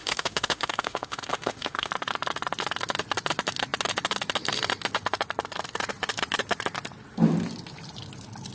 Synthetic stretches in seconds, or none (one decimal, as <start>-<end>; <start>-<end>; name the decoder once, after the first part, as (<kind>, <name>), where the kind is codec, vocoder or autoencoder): 0.0-1.9 (autoencoder, DAC-VAE)